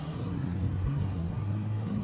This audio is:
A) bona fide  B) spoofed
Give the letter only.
B